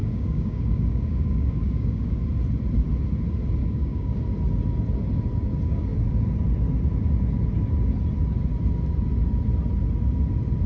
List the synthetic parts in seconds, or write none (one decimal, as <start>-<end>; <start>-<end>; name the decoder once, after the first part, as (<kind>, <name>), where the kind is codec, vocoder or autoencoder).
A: 0.0-2.2 (codec, DAC); 3.6-4.2